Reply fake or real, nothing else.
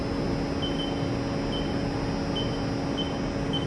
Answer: real